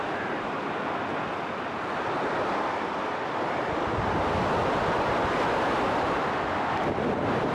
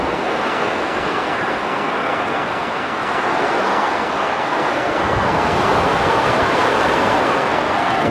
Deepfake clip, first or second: second